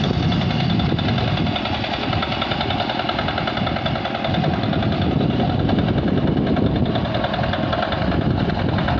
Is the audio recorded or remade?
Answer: recorded